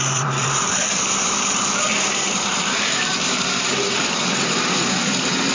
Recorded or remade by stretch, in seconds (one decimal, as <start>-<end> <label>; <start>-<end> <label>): 0.0-5.5 remade